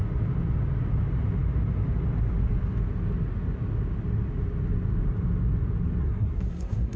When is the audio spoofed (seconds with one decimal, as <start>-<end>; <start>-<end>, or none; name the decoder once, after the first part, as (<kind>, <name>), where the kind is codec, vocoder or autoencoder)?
6.0-7.0 (codec, SNAC)

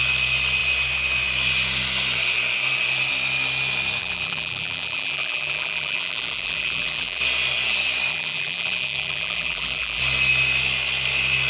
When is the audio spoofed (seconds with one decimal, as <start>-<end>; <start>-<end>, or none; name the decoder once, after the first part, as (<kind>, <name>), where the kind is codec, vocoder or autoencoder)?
4.0-7.2 (vocoder, BigVGAN v2); 8.1-10.0

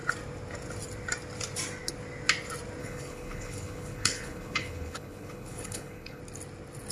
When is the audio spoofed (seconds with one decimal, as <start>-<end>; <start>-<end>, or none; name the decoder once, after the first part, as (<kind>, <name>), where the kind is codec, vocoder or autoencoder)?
2.8-6.2 (codec, HILCodec)